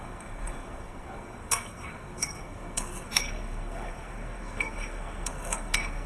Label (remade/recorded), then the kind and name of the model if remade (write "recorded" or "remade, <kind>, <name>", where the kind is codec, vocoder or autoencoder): remade, codec, SNAC